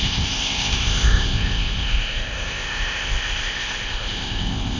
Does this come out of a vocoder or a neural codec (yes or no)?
yes